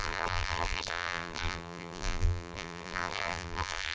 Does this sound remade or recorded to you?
remade